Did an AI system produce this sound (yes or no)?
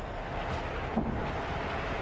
no